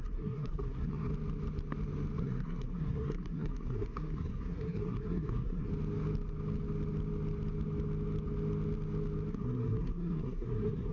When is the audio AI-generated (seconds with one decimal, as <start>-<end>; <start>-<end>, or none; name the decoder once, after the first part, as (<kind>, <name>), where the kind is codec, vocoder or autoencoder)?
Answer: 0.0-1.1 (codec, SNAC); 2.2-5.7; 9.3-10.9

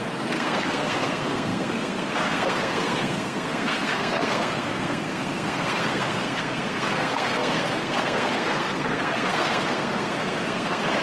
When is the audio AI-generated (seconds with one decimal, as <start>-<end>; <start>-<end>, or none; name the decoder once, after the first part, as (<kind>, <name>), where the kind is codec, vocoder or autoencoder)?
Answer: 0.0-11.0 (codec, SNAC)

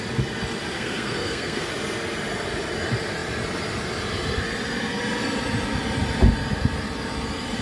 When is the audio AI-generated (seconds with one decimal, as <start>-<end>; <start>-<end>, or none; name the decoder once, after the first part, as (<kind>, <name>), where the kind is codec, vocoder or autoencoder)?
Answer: 0.7-1.7 (codec, SNAC)

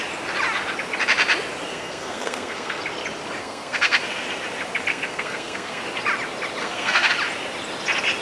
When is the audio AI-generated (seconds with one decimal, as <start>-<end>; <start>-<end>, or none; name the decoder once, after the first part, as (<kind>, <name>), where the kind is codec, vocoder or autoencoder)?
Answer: 1.7-2.8 (codec, SNAC); 3.4-4.0; 4.9-5.8; 6.6-7.1

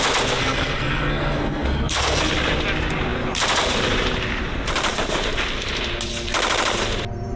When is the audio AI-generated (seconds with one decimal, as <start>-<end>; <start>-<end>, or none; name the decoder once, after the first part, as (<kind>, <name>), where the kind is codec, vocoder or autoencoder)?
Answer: 0.4-2.3 (codec, SNAC)